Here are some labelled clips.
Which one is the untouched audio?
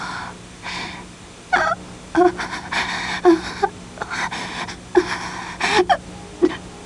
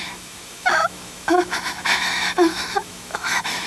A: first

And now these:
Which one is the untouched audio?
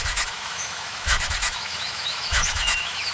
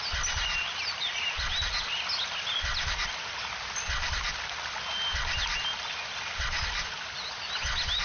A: second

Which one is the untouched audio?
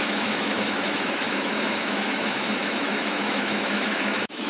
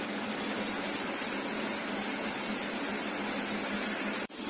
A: second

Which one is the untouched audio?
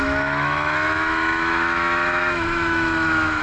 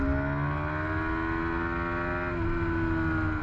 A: second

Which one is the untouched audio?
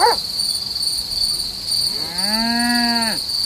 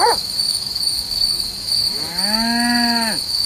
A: first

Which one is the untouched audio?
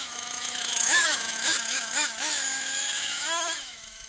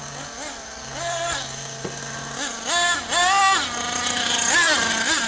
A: second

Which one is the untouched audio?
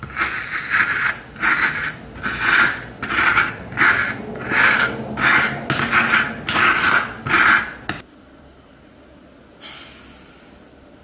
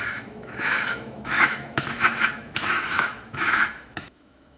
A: first